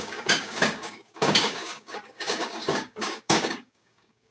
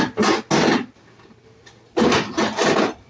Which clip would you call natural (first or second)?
second